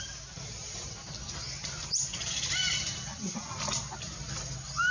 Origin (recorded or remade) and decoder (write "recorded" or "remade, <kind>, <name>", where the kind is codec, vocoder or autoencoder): recorded